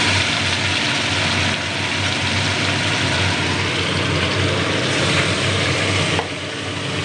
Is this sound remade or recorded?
recorded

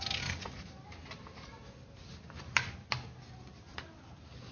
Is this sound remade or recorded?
recorded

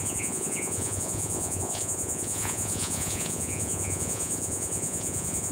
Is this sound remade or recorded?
remade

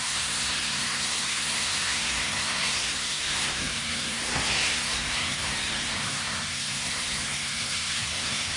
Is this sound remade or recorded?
remade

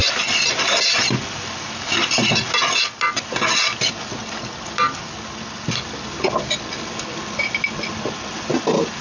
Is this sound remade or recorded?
recorded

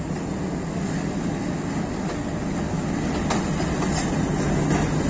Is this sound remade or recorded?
recorded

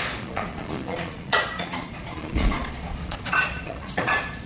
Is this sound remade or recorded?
remade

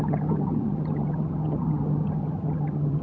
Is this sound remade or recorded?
remade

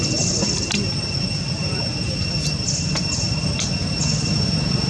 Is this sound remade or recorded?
recorded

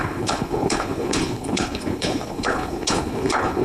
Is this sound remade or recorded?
remade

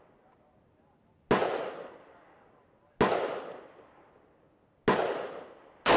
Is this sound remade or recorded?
recorded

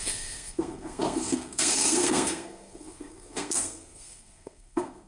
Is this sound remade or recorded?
remade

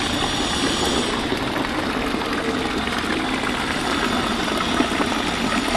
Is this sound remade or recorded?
recorded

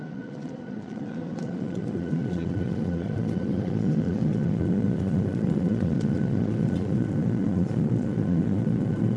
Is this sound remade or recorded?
remade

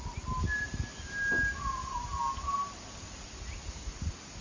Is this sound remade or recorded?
recorded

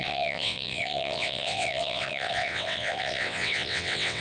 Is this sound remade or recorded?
remade